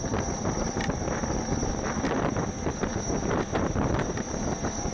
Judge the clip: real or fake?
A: real